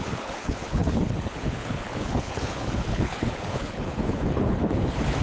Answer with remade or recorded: remade